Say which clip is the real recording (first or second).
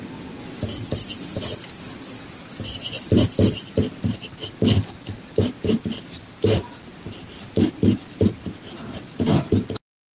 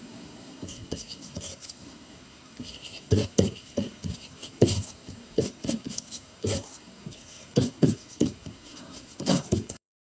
first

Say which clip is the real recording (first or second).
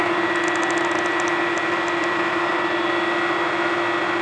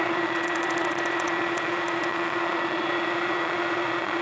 first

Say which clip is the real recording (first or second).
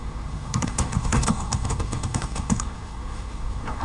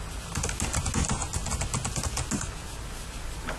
second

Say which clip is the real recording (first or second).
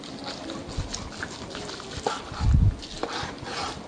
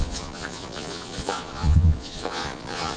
first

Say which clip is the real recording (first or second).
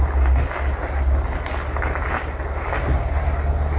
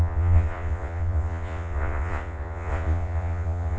first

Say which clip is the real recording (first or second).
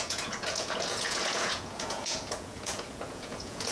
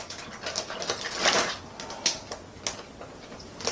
second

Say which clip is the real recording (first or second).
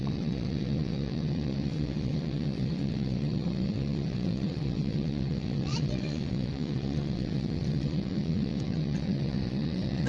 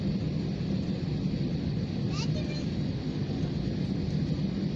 second